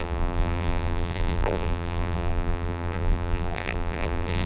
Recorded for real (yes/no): no